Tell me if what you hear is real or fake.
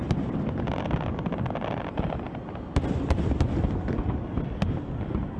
real